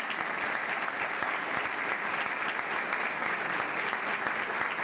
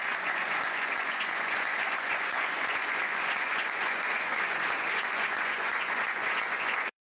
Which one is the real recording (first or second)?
first